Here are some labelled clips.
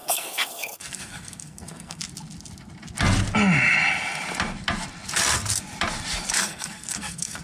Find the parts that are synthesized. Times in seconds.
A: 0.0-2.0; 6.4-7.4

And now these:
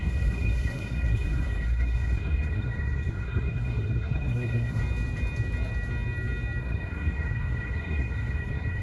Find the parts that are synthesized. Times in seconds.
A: 0.0-4.8; 6.6-8.8